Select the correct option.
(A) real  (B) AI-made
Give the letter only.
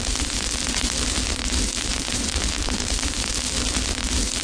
A